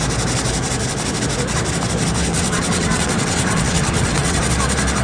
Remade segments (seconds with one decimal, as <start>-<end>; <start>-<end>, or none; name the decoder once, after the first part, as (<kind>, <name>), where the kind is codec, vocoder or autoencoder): 2.3-4.4 (vocoder, WaveNeXt)